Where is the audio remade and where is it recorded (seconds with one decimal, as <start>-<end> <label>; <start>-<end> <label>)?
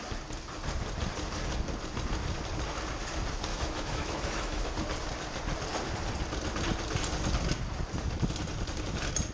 0.0-3.5 recorded; 3.5-4.7 remade; 4.7-9.3 recorded